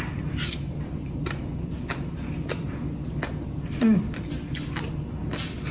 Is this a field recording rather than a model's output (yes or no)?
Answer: yes